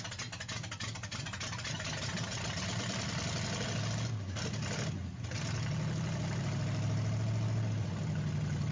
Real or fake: real